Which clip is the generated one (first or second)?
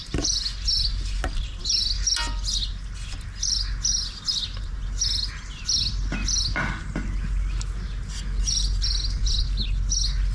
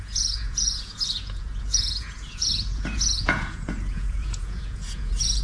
second